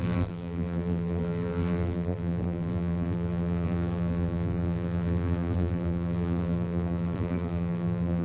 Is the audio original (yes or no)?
no